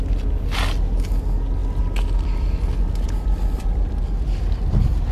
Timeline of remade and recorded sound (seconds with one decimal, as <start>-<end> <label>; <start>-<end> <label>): 0.0-5.1 recorded